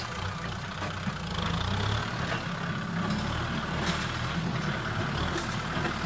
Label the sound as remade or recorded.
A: recorded